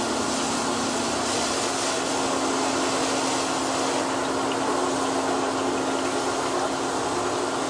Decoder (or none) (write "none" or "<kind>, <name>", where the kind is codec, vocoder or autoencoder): none